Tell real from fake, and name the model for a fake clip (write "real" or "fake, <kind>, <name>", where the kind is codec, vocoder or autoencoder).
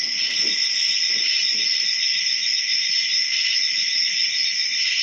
real